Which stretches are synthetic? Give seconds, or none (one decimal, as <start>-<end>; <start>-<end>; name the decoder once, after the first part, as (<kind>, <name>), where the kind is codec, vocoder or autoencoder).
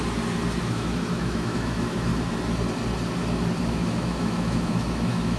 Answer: 0.6-2.1 (autoencoder, DAC-VAE); 3.6-5.4